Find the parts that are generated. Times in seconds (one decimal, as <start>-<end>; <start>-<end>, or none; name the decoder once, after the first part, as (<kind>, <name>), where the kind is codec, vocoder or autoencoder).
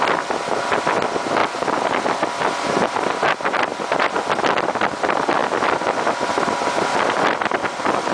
none